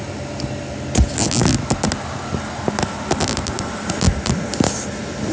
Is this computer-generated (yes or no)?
no